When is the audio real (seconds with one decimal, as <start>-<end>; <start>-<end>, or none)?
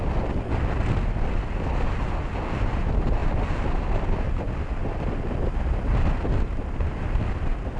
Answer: 0.0-7.8